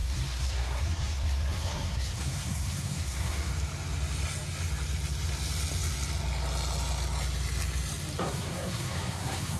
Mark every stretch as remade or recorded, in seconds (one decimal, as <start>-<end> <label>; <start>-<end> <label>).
0.0-3.5 remade; 3.5-8.2 recorded; 8.2-9.6 remade